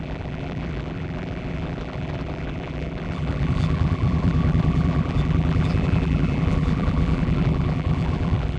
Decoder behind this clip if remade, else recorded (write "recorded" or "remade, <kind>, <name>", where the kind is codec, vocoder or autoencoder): remade, vocoder, BigVGAN v2